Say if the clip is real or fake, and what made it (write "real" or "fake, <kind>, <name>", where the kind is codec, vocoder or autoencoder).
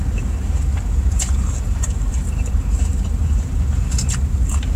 fake, vocoder, BigVGAN v2